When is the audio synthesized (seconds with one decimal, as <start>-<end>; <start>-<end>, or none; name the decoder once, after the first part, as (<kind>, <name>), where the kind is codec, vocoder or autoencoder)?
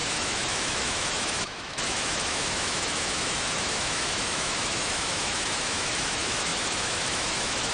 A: 0.0-7.7 (autoencoder, DAC-VAE)